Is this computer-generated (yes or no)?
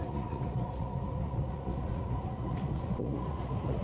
yes